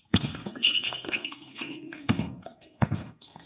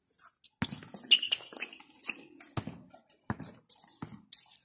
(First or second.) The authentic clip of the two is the second